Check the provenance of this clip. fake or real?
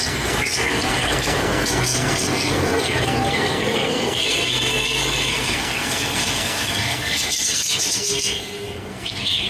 fake